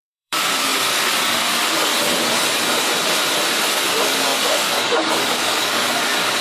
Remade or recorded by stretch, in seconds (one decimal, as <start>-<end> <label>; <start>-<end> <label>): 0.0-1.9 remade; 1.9-3.7 recorded; 3.7-6.4 remade